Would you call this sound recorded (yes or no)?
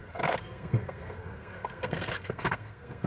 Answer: no